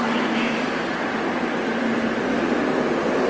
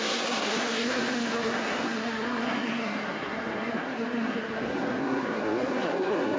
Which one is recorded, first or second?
first